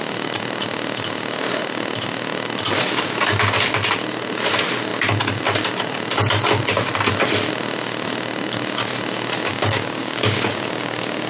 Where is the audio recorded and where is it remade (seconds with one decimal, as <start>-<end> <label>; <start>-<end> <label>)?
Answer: 0.0-9.5 recorded; 9.5-11.3 remade